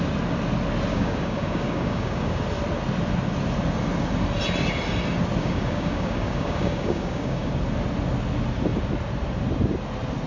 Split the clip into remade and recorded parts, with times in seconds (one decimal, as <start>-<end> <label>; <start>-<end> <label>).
0.0-0.9 recorded; 0.9-2.4 remade; 2.4-5.4 recorded; 5.4-7.5 remade; 7.5-10.3 recorded

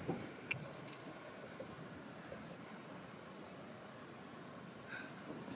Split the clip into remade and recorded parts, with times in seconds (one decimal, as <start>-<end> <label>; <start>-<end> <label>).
0.0-2.8 recorded; 2.8-4.4 remade; 4.4-5.6 recorded